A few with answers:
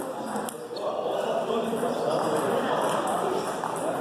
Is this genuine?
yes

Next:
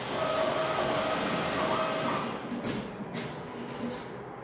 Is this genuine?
yes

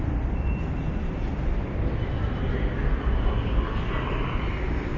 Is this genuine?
yes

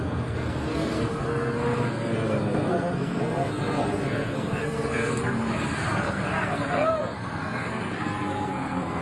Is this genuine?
no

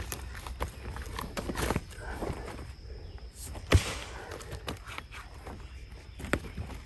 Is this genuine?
yes